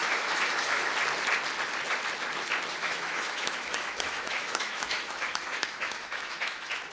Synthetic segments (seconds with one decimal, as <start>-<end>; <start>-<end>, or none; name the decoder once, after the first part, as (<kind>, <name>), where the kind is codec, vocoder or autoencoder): 0.0-0.9 (autoencoder, DAC-VAE); 2.8-6.9